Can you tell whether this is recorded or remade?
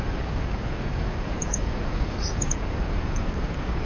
remade